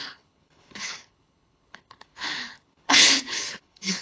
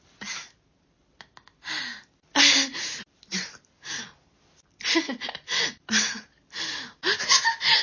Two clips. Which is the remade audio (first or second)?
first